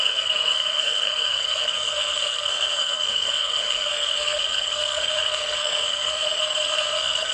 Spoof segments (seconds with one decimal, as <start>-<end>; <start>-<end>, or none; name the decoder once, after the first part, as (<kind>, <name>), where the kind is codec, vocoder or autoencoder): 0.0-7.3 (codec, SNAC)